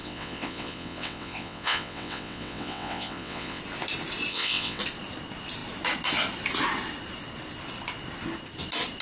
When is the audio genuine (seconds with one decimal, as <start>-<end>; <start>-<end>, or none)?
3.6-4.3; 4.8-9.0